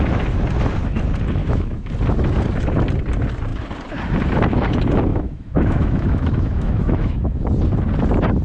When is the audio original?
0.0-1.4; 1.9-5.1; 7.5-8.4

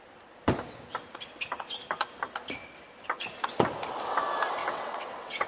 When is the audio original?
0.0-4.6

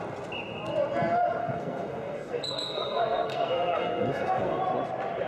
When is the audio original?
0.0-1.4; 4.6-5.3

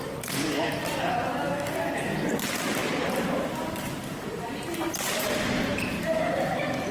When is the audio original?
0.0-2.8; 5.1-5.7; 6.2-6.9

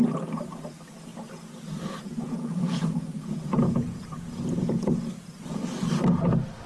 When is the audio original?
0.0-1.1; 5.1-6.7

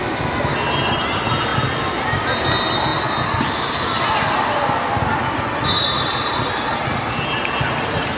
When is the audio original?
0.0-8.2